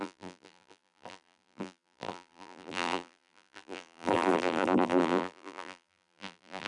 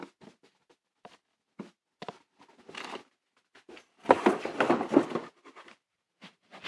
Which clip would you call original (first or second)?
second